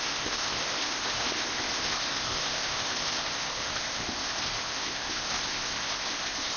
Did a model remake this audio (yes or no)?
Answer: yes